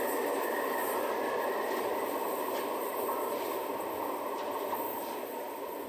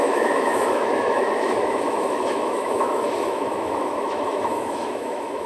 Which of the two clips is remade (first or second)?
second